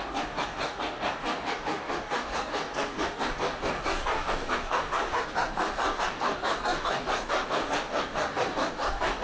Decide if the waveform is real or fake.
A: fake